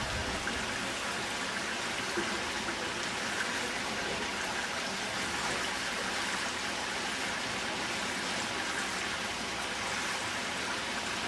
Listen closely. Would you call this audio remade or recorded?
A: recorded